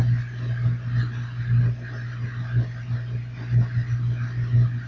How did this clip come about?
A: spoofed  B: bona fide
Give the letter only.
B